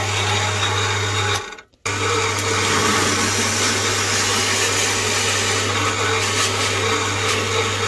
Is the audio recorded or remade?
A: recorded